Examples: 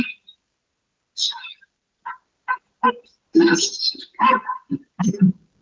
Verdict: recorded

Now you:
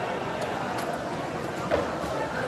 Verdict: remade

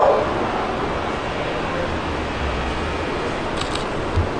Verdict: recorded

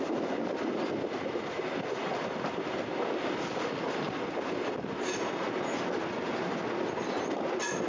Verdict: recorded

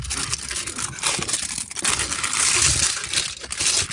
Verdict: recorded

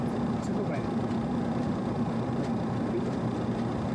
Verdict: remade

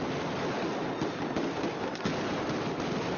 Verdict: recorded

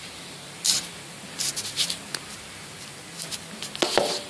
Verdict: recorded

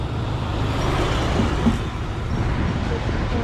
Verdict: recorded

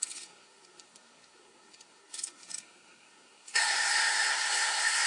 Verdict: remade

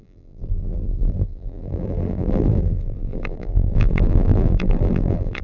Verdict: remade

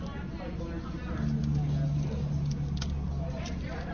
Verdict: recorded